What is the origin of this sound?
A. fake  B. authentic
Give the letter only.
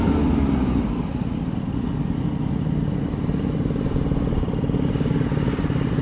B